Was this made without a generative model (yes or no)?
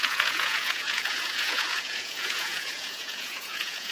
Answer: no